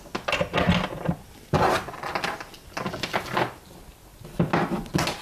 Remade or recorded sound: recorded